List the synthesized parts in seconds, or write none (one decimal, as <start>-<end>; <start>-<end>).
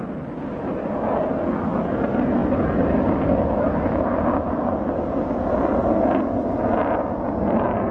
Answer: none